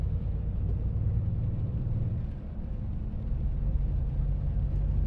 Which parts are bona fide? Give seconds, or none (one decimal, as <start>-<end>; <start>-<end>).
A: 0.0-1.7; 4.2-5.1